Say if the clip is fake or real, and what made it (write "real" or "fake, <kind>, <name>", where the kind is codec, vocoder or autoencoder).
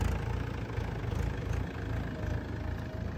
real